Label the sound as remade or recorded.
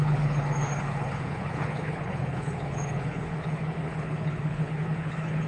remade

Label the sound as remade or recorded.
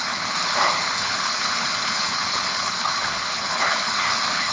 remade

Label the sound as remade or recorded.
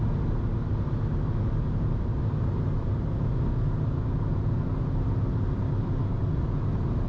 recorded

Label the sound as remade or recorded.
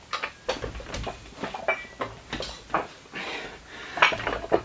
recorded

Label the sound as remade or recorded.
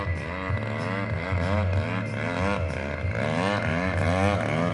recorded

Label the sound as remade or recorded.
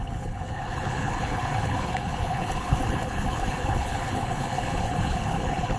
remade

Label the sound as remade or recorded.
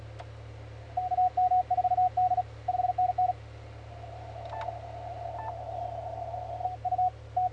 recorded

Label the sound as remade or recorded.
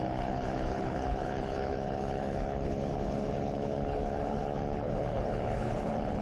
remade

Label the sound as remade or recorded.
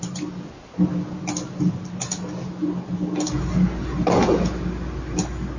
recorded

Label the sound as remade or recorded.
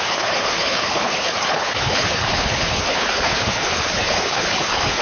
remade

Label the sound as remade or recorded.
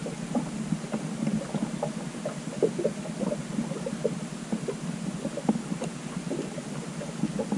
recorded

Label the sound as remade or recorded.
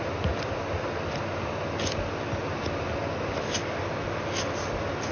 recorded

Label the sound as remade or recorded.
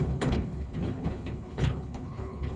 remade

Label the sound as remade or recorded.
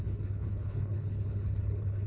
remade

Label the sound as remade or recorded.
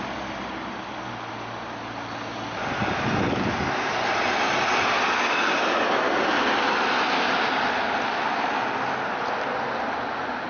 recorded